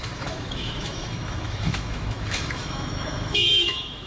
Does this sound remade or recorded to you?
remade